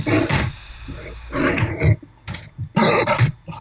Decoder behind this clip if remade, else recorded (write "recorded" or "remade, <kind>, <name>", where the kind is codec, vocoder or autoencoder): recorded